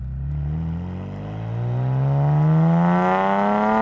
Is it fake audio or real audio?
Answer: real